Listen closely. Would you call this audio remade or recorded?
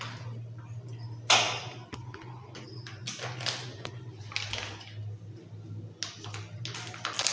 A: recorded